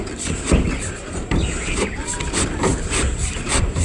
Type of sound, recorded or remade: remade